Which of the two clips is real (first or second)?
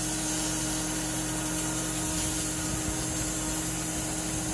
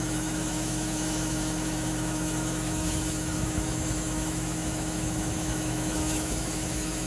first